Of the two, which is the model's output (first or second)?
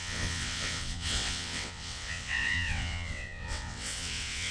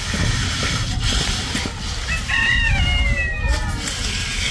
first